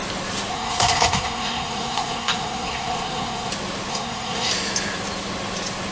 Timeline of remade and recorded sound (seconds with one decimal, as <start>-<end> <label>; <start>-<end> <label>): 0.0-0.5 recorded; 0.5-3.5 remade; 3.5-3.9 recorded; 3.9-4.5 remade; 4.5-5.9 recorded